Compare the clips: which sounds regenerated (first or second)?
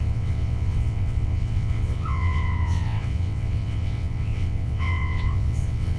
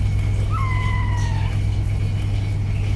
first